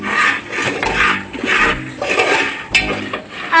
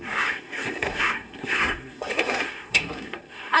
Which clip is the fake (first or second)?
second